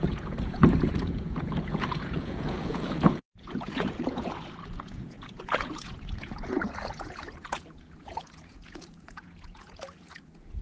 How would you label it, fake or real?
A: fake